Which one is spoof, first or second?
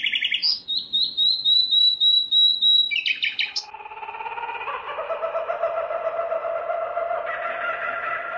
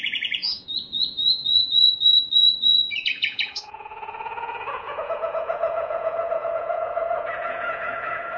second